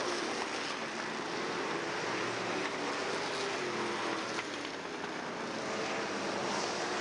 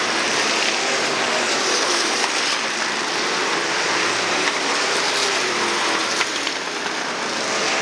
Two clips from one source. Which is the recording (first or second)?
first